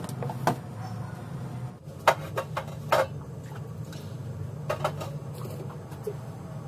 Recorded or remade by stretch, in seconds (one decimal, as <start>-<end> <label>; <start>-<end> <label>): 0.0-6.7 recorded

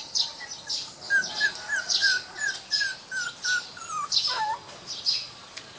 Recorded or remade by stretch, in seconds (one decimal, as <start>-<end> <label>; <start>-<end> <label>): 0.0-5.8 recorded

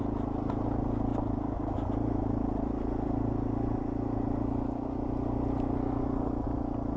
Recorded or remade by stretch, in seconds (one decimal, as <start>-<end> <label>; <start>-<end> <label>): 0.0-7.0 recorded

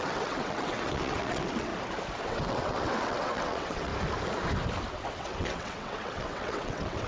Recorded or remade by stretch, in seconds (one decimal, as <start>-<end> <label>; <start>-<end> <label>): 0.0-1.7 remade; 1.7-2.2 recorded; 2.2-3.9 remade; 3.9-5.1 recorded; 5.1-7.1 remade

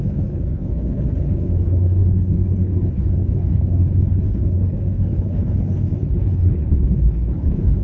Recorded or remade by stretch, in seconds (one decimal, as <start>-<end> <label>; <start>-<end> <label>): 0.0-7.8 remade

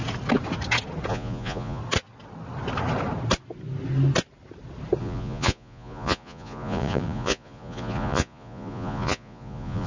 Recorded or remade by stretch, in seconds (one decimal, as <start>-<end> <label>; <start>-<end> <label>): 0.0-1.1 recorded; 1.1-1.8 remade; 1.8-5.0 recorded; 5.0-9.9 remade